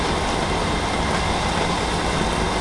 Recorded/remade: recorded